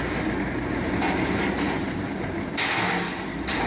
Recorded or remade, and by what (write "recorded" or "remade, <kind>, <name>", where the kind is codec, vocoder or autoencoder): recorded